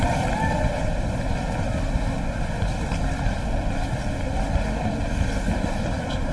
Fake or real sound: real